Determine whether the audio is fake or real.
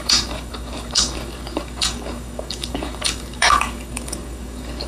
fake